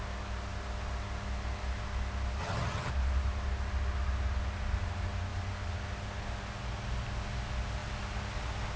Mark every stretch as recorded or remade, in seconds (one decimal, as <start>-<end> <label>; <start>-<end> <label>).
0.0-2.4 recorded; 2.4-2.9 remade; 2.9-8.8 recorded